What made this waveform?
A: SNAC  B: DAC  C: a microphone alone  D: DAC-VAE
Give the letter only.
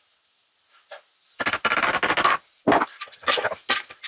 C